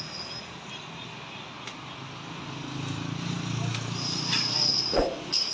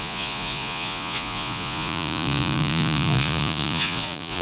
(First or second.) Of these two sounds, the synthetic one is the second